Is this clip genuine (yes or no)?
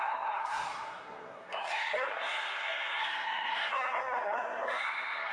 no